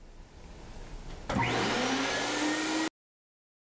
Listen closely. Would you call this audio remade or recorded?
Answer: recorded